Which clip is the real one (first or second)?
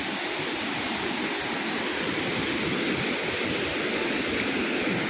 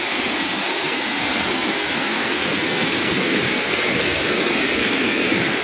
first